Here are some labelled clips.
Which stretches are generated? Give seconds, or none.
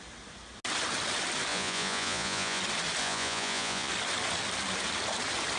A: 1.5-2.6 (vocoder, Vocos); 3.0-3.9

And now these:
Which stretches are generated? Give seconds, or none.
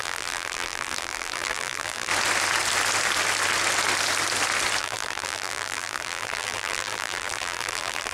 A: 0.0-2.1 (vocoder, BigVGAN v2); 4.8-8.1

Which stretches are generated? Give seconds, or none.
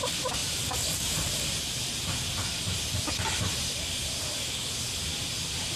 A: none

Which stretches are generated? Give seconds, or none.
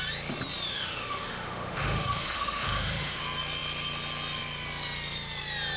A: 0.7-3.2 (autoencoder, DAC-VAE)